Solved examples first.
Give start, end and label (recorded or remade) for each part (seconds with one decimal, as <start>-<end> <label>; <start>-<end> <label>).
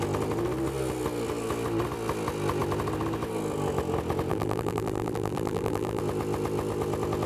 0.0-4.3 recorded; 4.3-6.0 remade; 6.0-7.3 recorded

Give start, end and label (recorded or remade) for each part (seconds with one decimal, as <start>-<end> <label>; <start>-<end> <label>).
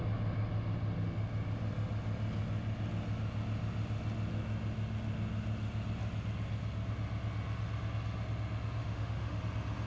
0.0-8.8 recorded; 8.8-9.4 remade; 9.4-9.9 recorded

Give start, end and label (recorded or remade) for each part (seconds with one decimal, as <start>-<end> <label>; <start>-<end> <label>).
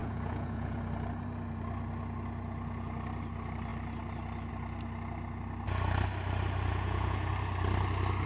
0.0-0.8 remade; 0.8-6.7 recorded; 6.7-7.3 remade; 7.3-8.3 recorded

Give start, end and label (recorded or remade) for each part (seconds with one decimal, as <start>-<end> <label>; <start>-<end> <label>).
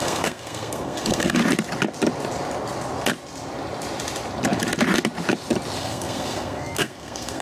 0.0-1.4 remade; 1.4-5.8 recorded; 5.8-7.4 remade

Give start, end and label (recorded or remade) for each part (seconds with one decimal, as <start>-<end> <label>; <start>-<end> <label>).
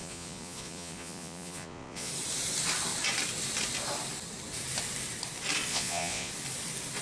0.0-2.1 remade; 2.1-5.7 recorded; 5.7-6.3 remade; 6.3-7.0 recorded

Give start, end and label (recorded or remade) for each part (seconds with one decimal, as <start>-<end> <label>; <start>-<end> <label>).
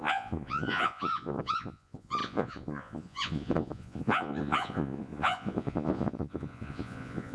0.0-7.3 remade